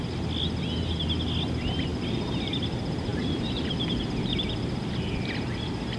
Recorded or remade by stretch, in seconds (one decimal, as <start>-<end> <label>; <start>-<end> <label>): 0.0-6.0 recorded